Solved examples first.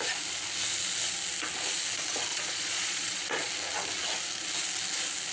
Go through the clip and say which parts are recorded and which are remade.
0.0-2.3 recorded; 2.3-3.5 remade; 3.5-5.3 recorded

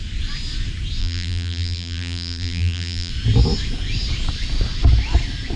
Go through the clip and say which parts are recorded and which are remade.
0.0-1.0 recorded; 1.0-3.1 remade; 3.1-5.6 recorded

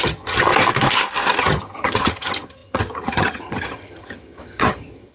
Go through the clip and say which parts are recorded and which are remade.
0.0-0.5 remade; 0.5-1.4 recorded; 1.4-5.1 remade